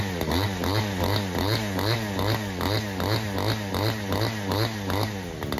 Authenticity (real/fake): real